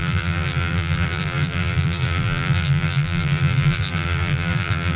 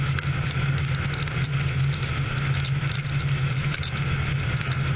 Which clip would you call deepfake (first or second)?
first